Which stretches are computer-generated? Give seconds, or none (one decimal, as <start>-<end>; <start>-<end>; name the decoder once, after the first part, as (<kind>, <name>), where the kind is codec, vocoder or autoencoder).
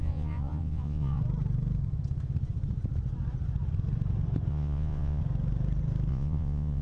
0.0-1.2 (vocoder, Vocos); 4.5-5.2; 6.1-6.8